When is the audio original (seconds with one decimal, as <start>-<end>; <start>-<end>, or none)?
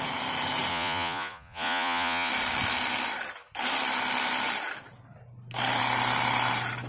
0.0-0.7; 2.3-6.9